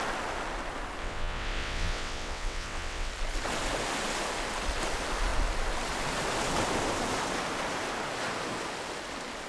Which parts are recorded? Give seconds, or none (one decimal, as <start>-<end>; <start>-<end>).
0.0-1.0; 3.1-9.5